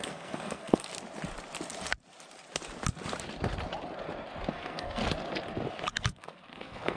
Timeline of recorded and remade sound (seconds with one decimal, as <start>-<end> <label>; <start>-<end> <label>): 0.0-0.9 remade; 0.9-4.5 recorded; 4.5-5.0 remade; 5.0-5.9 recorded; 5.9-7.0 remade